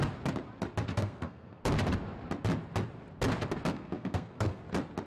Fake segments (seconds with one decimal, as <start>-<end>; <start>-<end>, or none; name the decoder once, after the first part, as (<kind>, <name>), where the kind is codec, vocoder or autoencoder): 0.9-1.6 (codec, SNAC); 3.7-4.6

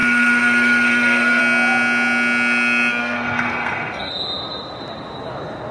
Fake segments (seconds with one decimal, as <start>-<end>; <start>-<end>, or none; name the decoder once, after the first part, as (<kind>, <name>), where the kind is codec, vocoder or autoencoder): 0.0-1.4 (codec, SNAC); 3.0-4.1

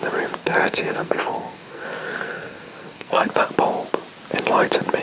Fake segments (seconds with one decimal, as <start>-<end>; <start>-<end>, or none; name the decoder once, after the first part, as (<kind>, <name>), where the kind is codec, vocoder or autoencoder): 0.4-3.3 (codec, SNAC)

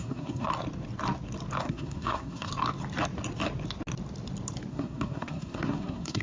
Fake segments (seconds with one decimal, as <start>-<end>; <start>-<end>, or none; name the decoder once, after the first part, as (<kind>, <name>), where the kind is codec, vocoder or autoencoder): 0.0-0.5 (codec, SNAC); 1.6-2.5; 4.7-6.2

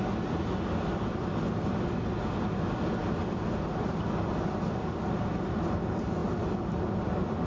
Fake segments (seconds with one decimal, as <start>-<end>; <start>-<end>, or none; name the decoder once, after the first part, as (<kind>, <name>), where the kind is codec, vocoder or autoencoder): none